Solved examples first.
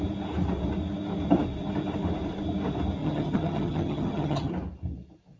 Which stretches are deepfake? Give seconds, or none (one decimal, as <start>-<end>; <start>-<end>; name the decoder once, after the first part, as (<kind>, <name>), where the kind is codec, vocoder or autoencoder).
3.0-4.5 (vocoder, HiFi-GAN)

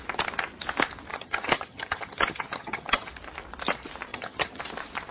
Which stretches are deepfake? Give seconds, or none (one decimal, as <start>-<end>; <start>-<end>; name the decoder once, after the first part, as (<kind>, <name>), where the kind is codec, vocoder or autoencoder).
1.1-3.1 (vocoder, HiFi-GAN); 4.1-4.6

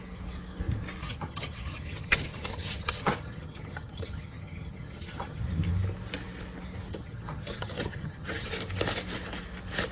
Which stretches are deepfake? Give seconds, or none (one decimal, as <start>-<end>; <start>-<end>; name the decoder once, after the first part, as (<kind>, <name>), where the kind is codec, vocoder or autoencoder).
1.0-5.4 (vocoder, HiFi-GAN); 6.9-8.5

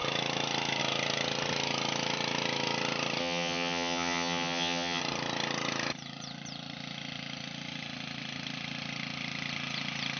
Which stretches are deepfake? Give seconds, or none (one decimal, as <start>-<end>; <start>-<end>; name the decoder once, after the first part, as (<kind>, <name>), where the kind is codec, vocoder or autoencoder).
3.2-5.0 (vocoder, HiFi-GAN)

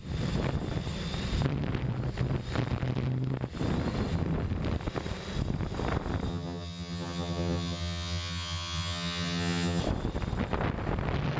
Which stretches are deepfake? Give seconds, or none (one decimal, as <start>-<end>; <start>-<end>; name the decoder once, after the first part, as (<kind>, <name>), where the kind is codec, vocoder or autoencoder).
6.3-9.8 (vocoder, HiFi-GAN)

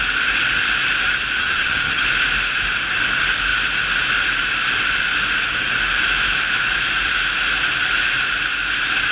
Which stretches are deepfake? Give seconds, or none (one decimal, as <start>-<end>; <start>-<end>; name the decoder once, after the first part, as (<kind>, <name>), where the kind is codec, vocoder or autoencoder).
1.4-2.0 (vocoder, HiFi-GAN)

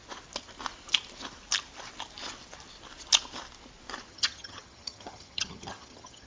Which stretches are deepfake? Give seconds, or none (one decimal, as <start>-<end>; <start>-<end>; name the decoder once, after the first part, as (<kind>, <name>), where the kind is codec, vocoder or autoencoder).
4.1-6.3 (vocoder, HiFi-GAN)